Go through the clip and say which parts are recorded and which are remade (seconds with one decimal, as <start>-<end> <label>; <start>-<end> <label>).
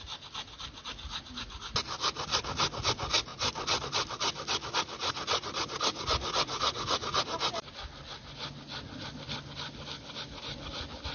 0.0-5.0 recorded; 5.0-7.2 remade; 7.2-11.1 recorded